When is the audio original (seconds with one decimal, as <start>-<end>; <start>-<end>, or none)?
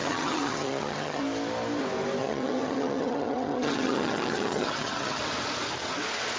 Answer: 1.2-2.2; 5.2-6.4